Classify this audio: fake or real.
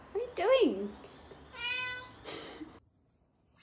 real